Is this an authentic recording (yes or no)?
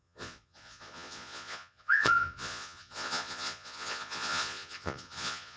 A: no